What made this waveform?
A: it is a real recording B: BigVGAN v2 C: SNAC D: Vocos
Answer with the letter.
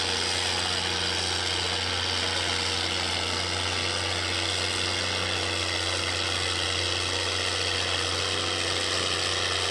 A